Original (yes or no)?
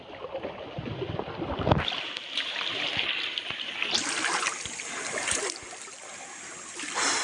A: yes